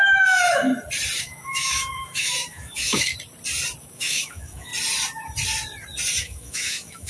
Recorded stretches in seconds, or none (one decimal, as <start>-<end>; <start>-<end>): 0.7-1.2; 3.1-3.8; 4.7-6.2